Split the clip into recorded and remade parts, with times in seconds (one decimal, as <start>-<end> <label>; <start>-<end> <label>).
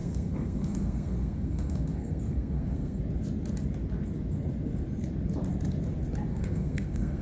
0.0-3.0 remade; 3.0-6.3 recorded; 6.3-7.2 remade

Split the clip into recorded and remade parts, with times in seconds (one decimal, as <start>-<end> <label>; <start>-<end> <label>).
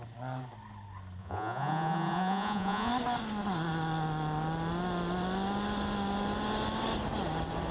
0.0-1.2 recorded; 1.2-2.9 remade; 2.9-7.7 recorded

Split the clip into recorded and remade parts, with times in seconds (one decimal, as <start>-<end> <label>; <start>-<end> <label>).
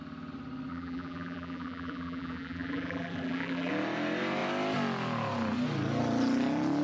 0.0-0.7 recorded; 0.7-3.7 remade; 3.7-6.8 recorded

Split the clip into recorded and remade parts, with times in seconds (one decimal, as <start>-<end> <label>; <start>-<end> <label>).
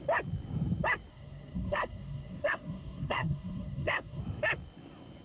0.0-1.1 recorded; 1.1-4.2 remade; 4.2-5.2 recorded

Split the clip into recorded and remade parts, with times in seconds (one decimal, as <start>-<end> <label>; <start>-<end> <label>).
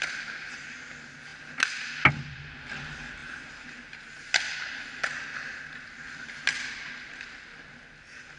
0.0-8.4 recorded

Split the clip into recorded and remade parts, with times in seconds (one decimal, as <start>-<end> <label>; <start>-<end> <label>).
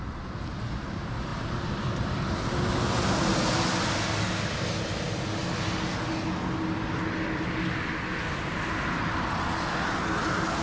0.0-1.3 recorded; 1.3-2.2 remade; 2.2-8.1 recorded; 8.1-8.7 remade; 8.7-10.6 recorded